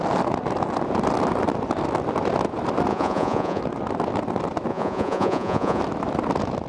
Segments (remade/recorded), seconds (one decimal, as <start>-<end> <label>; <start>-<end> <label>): 0.0-2.9 recorded; 2.9-3.6 remade; 3.6-4.7 recorded; 4.7-5.8 remade; 5.8-6.7 recorded